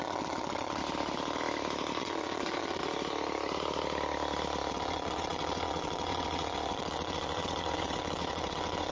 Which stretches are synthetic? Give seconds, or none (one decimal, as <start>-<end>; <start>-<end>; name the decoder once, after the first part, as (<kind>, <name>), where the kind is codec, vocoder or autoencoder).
0.0-0.8 (vocoder, WaveNeXt); 2.0-2.8; 4.7-8.9